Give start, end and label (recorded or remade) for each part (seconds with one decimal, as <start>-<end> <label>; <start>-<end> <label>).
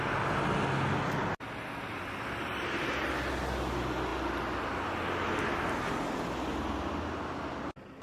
0.0-8.0 recorded